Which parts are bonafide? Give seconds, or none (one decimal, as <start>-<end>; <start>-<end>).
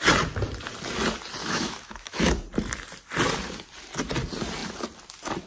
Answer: 0.0-1.4; 2.3-5.5